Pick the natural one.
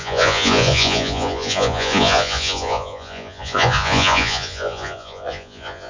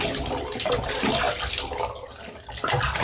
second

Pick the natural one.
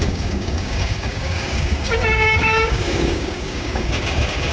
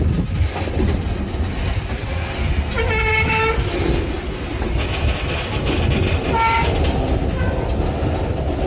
second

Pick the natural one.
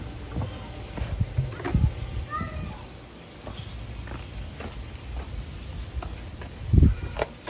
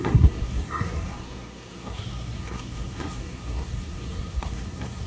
first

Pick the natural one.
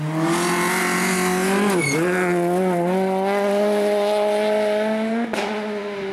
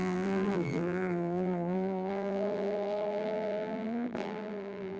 first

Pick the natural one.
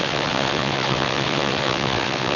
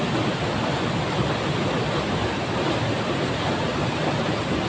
second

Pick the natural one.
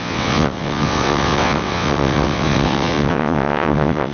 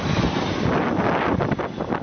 second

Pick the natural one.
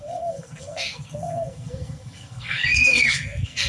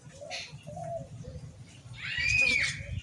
second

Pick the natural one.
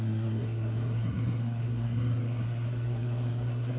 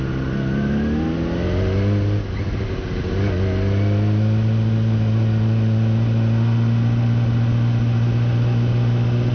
second